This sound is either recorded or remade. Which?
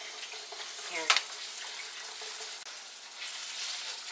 recorded